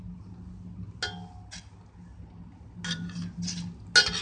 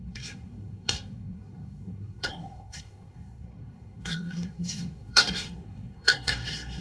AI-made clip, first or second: second